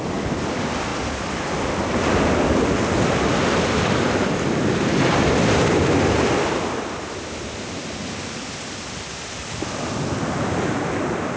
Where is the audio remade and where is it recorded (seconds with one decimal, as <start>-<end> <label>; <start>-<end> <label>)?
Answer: 0.0-11.4 recorded